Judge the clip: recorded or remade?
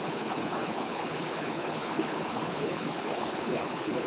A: remade